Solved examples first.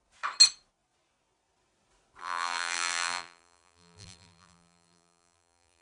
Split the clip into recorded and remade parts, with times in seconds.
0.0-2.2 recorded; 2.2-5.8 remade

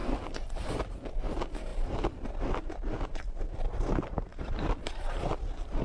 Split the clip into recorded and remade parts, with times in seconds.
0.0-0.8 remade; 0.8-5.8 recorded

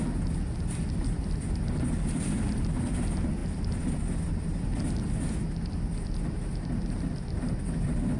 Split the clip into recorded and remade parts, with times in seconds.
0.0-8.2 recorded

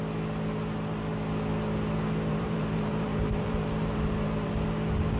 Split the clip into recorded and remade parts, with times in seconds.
0.0-2.3 recorded; 2.3-4.5 remade; 4.5-5.2 recorded